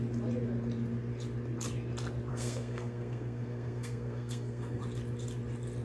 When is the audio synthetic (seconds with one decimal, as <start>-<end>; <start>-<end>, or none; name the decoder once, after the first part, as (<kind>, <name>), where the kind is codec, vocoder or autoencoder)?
2.3-4.8 (codec, SNAC)

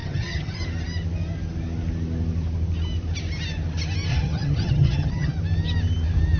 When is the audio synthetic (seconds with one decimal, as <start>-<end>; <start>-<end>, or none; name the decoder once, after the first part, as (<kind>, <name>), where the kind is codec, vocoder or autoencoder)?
0.0-0.6 (vocoder, HiFi-GAN); 4.1-5.3

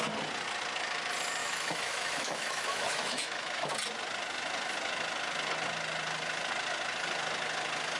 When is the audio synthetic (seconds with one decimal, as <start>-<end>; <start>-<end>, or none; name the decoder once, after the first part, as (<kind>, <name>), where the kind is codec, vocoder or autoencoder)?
1.4-3.7 (autoencoder, DAC-VAE)

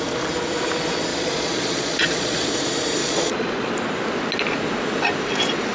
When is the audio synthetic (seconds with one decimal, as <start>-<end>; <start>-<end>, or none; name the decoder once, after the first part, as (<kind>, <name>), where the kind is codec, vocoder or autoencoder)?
1.1-2.5 (vocoder, Vocos); 3.0-3.7

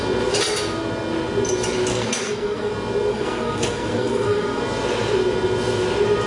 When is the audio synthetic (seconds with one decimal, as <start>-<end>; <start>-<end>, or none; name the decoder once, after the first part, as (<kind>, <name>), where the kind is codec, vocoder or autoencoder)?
1.9-2.7 (codec, SNAC); 3.1-4.6

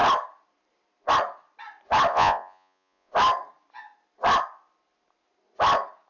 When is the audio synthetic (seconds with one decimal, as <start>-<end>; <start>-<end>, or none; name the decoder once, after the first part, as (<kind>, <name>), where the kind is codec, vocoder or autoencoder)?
2.1-3.1 (vocoder, Vocos)

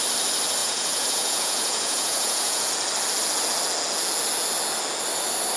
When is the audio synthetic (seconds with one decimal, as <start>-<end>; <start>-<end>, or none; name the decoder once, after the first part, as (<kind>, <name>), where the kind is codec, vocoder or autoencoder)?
0.6-2.7 (vocoder, Vocos)

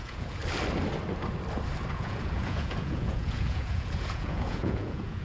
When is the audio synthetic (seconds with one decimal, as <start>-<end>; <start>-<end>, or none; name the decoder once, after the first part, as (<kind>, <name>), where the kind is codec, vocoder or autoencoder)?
0.0-0.4 (vocoder, Vocos); 1.9-5.2